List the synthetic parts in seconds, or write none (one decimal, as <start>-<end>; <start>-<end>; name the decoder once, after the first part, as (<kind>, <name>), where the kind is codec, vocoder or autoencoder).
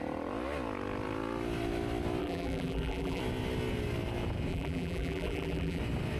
2.2-3.2 (vocoder, BigVGAN v2); 4.5-5.8